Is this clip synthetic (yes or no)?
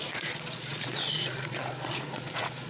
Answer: yes